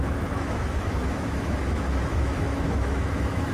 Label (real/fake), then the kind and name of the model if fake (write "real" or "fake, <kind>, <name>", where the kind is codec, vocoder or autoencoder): fake, autoencoder, DAC-VAE